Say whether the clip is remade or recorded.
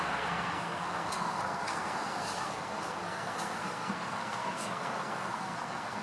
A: remade